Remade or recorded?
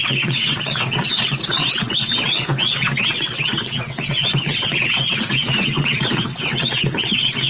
remade